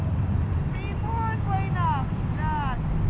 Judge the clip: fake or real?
real